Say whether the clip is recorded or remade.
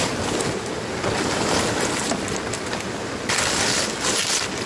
recorded